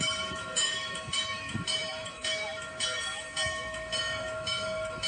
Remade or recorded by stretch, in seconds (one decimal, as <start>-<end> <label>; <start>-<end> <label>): 0.0-5.1 remade